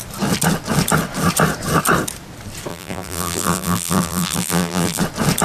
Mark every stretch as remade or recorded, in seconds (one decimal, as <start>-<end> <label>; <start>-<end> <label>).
0.0-2.7 recorded; 2.7-5.0 remade; 5.0-5.4 recorded